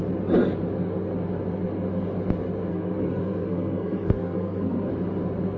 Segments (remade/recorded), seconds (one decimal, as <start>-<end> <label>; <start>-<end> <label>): 0.0-2.7 recorded; 2.7-4.9 remade; 4.9-5.6 recorded